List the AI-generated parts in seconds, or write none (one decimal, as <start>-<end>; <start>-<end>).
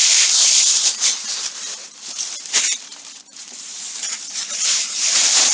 0.0-5.5